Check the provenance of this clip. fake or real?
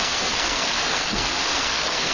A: fake